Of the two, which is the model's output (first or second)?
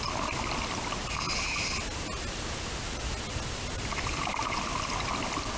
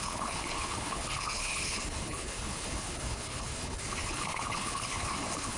second